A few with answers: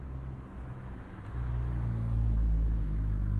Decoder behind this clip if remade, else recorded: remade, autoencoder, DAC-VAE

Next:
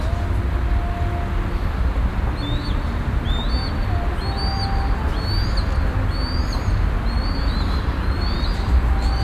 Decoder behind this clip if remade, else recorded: recorded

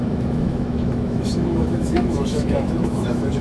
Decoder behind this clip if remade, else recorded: remade, autoencoder, DAC-VAE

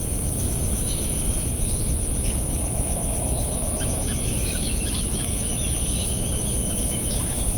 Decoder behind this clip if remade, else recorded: remade, autoencoder, DAC-VAE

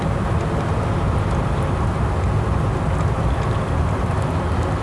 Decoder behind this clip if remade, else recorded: recorded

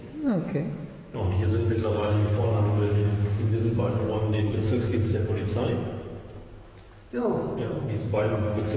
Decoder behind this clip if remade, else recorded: remade, autoencoder, DAC-VAE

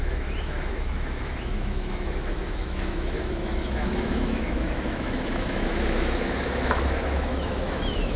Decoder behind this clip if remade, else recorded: remade, autoencoder, DAC-VAE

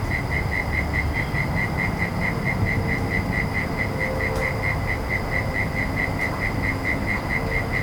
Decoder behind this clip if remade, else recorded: recorded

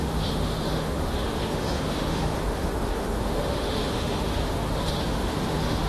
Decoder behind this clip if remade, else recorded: remade, autoencoder, DAC-VAE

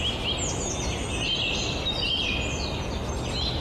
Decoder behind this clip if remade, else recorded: recorded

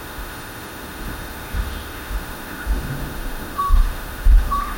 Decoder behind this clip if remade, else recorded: remade, autoencoder, DAC-VAE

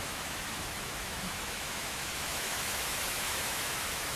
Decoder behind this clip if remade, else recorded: remade, autoencoder, DAC-VAE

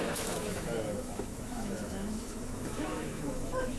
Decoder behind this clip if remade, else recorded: remade, autoencoder, DAC-VAE